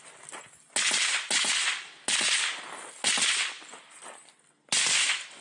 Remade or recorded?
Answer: recorded